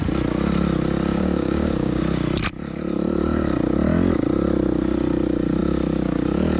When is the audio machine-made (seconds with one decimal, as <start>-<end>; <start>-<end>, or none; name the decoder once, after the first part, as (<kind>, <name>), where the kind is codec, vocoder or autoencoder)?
1.1-2.0 (codec, DAC)